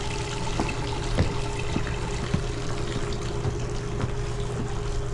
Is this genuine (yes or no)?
yes